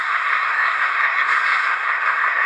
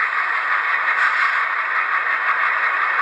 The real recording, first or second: second